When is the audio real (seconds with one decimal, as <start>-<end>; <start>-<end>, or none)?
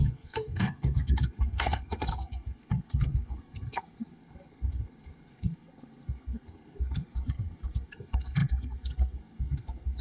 none